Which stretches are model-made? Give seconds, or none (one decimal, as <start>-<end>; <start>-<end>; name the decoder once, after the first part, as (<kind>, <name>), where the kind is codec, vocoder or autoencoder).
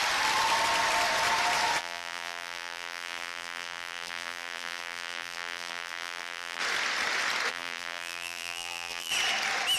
1.8-6.6 (vocoder, BigVGAN v2); 7.5-9.1